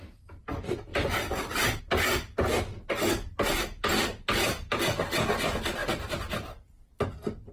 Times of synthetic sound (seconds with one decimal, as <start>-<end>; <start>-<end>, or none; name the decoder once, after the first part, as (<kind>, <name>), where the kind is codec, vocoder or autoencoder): 0.9-1.8 (vocoder, BigVGAN v2); 5.8-7.0